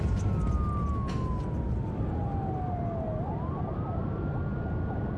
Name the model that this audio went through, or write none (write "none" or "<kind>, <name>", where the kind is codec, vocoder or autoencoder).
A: none